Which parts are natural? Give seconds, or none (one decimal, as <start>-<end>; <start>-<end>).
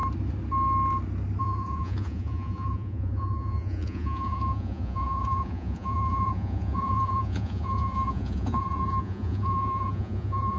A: 0.0-1.4